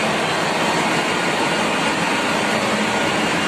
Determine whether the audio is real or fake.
real